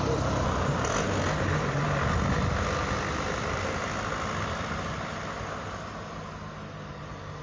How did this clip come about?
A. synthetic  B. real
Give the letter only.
B